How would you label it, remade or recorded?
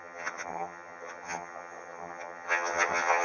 remade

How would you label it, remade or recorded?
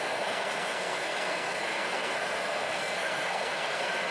remade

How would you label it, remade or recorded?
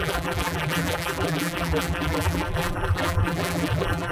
remade